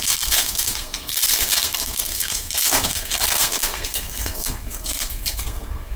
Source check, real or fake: fake